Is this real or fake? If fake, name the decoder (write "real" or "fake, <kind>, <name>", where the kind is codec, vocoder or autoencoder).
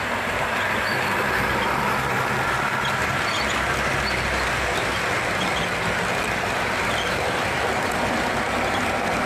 real